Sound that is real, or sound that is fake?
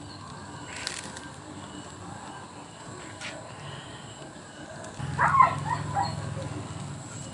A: real